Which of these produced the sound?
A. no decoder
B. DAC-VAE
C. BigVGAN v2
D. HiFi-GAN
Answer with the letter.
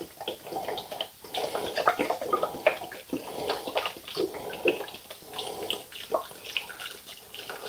A